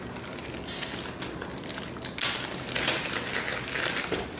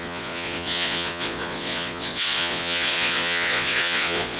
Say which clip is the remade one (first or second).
second